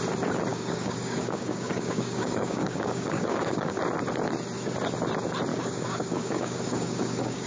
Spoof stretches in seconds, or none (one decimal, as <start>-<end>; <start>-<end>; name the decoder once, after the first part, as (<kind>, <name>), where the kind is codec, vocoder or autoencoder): 0.5-3.8 (codec, DAC); 5.5-7.5